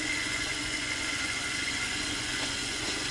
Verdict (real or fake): fake